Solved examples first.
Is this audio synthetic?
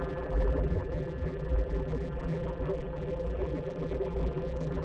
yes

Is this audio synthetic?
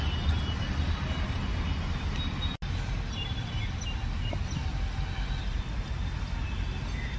no